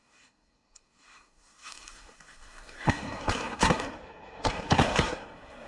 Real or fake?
fake